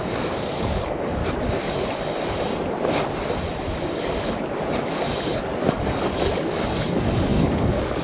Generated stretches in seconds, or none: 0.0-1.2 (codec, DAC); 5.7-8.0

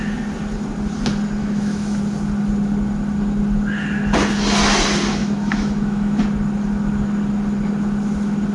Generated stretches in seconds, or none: 1.4-2.0 (autoencoder, DAC-VAE); 5.2-6.2

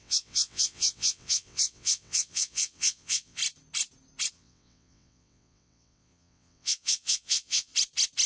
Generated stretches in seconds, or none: 0.0-3.4 (vocoder, WaveNeXt); 4.3-7.7

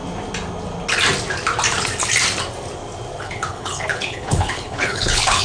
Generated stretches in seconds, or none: 3.2-5.4 (codec, HILCodec)

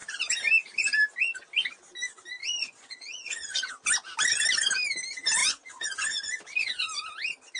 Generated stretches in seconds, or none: 2.4-3.7 (vocoder, Vocos); 5.4-6.4